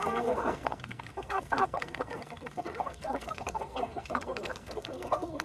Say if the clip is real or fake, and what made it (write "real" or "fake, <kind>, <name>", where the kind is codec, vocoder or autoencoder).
fake, codec, SNAC